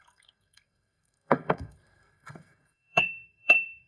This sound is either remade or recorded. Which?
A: remade